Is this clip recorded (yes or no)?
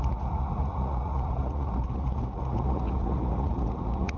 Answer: no